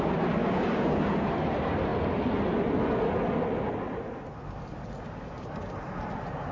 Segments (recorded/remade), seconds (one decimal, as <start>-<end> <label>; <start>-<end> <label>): 0.0-0.4 recorded; 0.4-1.0 remade; 1.0-6.5 recorded

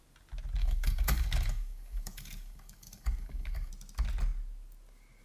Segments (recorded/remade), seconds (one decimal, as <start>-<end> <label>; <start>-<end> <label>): 0.0-0.6 recorded; 0.6-3.7 remade; 3.7-5.2 recorded

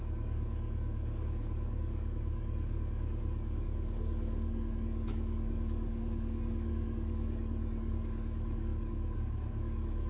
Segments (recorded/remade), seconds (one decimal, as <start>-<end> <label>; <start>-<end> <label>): 0.0-10.1 remade